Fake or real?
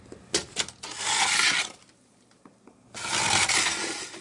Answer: real